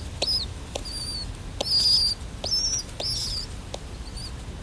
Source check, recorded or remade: recorded